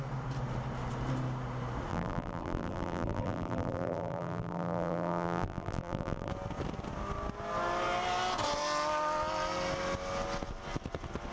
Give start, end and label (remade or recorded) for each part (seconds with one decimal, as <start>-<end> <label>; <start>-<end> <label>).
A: 0.0-1.9 recorded; 1.9-6.3 remade; 6.3-11.3 recorded